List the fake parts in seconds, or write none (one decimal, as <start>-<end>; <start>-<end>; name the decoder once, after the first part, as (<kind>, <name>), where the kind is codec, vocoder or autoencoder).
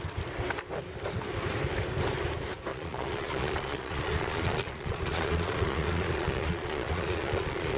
2.7-7.8 (vocoder, Vocos)